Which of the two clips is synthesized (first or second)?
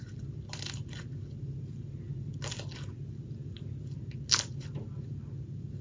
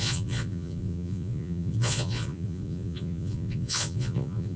second